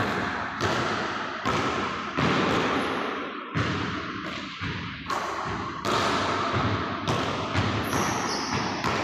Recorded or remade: recorded